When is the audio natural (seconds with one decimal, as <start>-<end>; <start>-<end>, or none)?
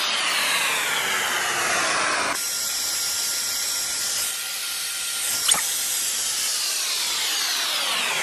0.0-8.2